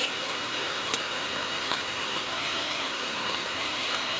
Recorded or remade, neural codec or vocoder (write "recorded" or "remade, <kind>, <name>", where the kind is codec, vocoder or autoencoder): remade, codec, SNAC